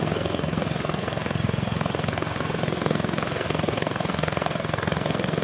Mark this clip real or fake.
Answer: fake